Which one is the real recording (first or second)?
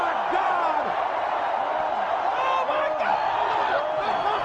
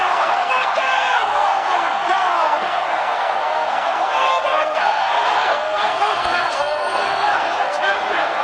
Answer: first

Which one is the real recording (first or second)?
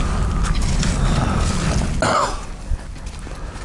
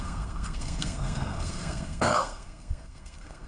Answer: first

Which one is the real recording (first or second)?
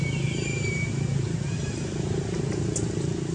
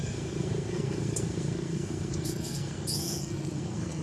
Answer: first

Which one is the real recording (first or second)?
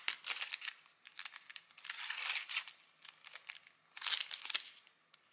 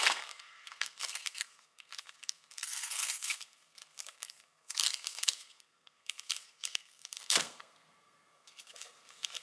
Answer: first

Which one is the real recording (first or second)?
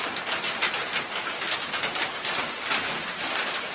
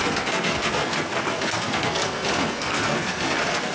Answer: first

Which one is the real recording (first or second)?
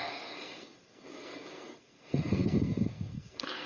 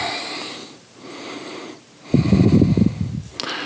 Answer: second